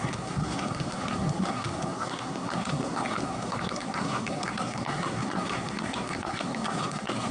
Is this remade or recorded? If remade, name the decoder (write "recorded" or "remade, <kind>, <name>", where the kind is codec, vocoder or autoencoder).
remade, codec, SNAC